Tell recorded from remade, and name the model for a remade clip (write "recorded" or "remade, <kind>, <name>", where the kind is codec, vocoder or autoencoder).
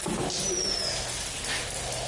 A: recorded